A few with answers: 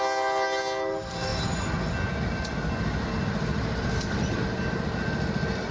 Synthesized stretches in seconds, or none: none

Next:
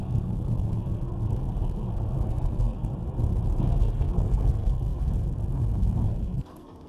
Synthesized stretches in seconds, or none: 0.0-2.9 (codec, SNAC); 3.6-6.9

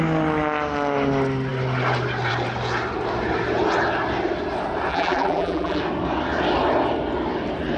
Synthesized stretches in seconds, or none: 4.9-5.8 (vocoder, BigVGAN v2)

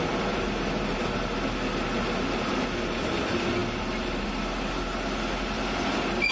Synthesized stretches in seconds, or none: none

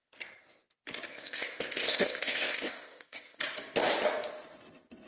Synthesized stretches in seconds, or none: 1.1-3.4 (codec, ZipCodec)

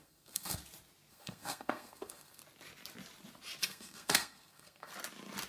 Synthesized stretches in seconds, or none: 0.0-0.6 (codec, SNAC); 1.1-2.4; 3.6-4.9

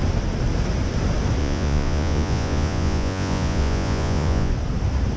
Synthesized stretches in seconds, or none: 1.4-4.5 (vocoder, Vocos)